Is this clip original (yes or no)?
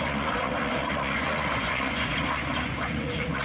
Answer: no